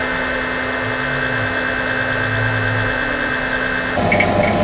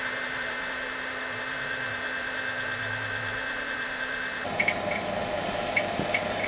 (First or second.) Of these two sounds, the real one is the first